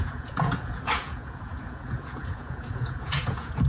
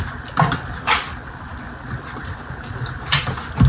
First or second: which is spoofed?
first